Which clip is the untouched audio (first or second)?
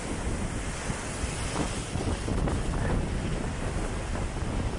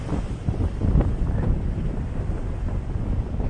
first